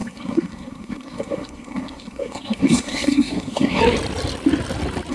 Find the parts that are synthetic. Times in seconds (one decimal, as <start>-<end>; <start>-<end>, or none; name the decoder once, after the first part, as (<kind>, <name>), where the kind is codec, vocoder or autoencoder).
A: 0.0-3.8 (codec, SNAC)